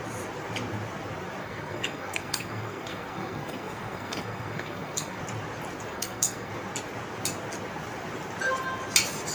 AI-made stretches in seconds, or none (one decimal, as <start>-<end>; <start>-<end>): 1.4-5.2; 5.9-6.5